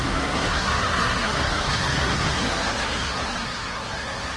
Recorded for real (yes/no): no